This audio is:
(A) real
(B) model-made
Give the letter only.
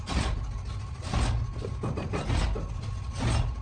A